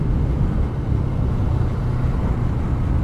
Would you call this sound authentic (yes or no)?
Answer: yes